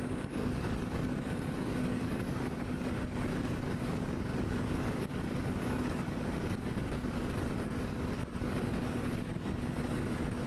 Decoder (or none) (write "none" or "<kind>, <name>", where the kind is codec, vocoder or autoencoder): codec, DAC